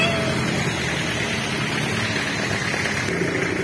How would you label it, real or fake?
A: real